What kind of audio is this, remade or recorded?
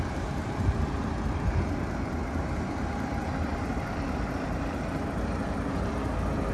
remade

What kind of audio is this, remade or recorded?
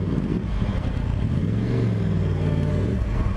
remade